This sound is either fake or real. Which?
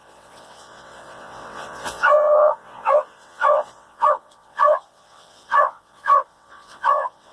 fake